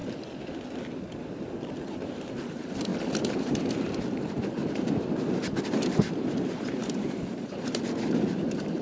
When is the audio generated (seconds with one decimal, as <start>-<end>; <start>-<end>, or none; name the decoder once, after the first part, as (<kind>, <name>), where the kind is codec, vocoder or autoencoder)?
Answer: 1.7-2.9 (vocoder, BigVGAN v2); 3.8-4.6; 5.6-8.8